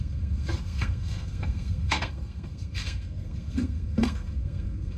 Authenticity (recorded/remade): remade